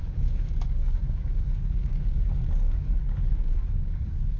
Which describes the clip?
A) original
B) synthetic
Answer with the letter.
B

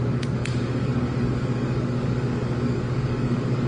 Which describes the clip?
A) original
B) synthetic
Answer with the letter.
B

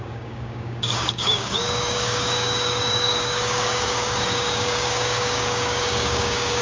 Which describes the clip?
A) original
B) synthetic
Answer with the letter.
B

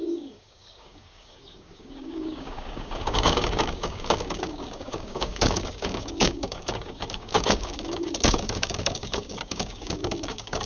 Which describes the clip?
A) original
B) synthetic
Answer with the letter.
B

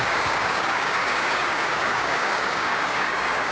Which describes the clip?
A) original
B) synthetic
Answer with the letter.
B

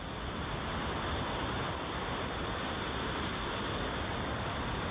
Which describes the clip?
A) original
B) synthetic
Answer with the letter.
A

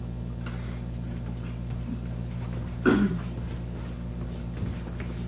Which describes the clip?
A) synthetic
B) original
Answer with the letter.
B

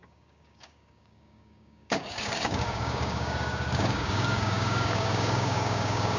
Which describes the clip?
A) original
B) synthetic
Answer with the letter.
B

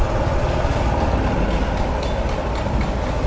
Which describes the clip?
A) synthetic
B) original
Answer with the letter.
B